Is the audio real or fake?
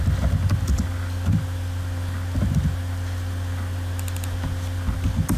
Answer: real